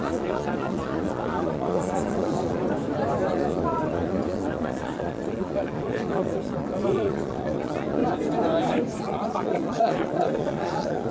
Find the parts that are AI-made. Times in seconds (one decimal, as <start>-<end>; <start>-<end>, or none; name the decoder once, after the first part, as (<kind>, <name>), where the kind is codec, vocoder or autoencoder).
0.0-2.6 (vocoder, Vocos); 3.3-8.0; 9.0-11.1